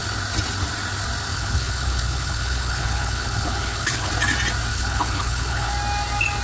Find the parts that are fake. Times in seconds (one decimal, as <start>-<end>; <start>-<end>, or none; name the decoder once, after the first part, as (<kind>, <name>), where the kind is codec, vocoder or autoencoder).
1.3-4.1 (codec, HILCodec); 4.7-5.7